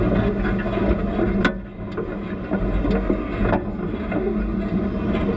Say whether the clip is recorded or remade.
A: recorded